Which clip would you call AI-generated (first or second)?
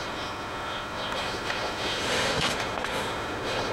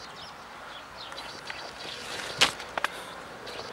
first